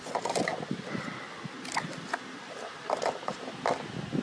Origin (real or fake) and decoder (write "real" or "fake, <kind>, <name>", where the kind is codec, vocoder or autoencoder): real